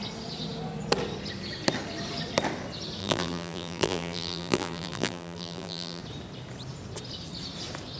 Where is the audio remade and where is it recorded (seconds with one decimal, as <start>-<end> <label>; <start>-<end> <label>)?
0.0-3.0 recorded; 3.0-6.0 remade; 6.0-8.0 recorded